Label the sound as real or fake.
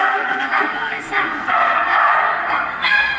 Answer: fake